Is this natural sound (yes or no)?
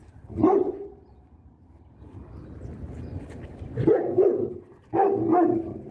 yes